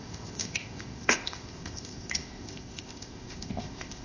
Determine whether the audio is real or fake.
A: fake